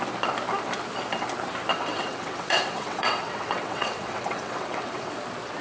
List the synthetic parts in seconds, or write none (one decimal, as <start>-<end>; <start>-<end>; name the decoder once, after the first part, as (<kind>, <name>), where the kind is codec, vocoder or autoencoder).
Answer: 1.7-5.1 (vocoder, WaveNeXt)